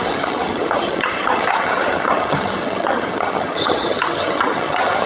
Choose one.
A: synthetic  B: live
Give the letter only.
A